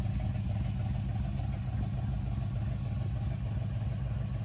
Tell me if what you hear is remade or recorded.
recorded